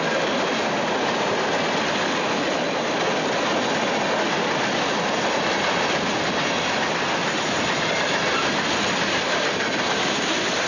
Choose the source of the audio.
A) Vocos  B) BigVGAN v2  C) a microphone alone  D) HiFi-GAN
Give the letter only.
C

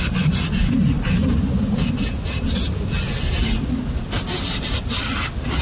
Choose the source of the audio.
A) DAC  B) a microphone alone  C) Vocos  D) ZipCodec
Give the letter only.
B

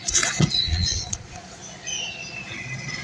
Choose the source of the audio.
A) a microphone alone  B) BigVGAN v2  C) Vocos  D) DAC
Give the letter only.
C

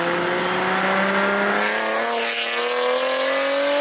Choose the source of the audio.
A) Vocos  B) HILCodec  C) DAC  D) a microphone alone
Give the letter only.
D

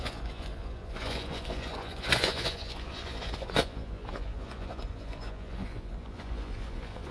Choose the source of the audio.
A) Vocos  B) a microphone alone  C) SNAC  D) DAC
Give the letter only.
A